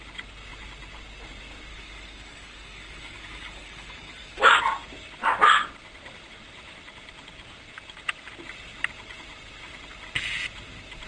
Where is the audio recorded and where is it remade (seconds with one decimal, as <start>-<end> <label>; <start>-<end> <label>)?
0.0-1.7 recorded; 1.7-4.6 remade; 4.6-11.1 recorded